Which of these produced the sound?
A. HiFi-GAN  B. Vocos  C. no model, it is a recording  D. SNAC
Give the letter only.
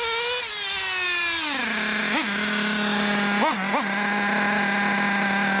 C